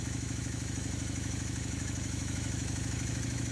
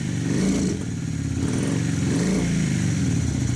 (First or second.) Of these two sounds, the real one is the second